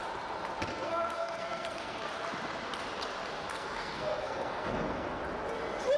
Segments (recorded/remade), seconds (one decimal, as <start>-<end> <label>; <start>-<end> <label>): 0.0-0.7 recorded; 0.7-2.1 remade; 2.1-3.5 recorded; 3.5-5.2 remade; 5.2-6.0 recorded